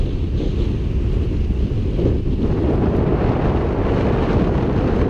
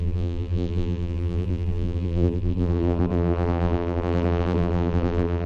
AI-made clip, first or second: second